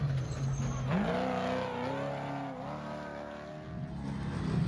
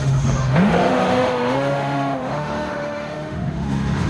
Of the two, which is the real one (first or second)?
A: first